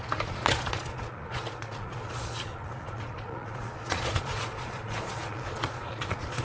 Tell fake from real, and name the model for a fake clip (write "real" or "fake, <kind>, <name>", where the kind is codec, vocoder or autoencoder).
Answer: fake, vocoder, Vocos